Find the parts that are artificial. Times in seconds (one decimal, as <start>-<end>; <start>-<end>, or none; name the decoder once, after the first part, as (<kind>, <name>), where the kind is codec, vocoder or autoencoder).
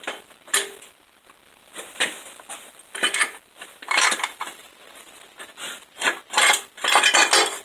3.7-5.0 (vocoder, BigVGAN v2)